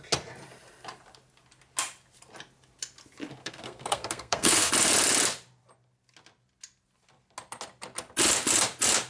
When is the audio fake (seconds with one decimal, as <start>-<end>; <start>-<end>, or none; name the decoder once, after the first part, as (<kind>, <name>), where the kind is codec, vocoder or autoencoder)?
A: 3.4-4.7 (codec, SNAC)